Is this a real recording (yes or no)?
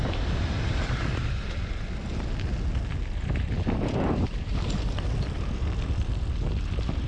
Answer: yes